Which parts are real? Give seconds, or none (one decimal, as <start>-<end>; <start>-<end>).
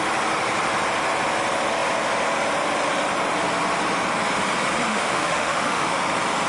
0.0-4.9; 6.0-6.5